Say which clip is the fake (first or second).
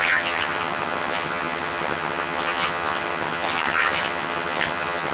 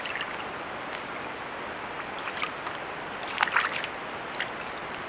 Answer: first